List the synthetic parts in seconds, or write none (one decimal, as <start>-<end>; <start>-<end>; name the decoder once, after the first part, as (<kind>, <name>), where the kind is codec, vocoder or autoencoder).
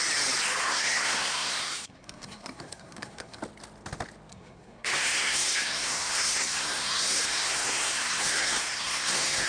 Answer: 0.6-3.4 (codec, SNAC); 4.3-9.5